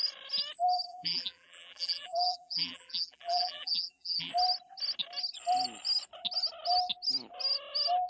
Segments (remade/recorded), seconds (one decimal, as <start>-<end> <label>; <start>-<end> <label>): 0.0-0.9 recorded; 0.9-4.3 remade; 4.3-8.1 recorded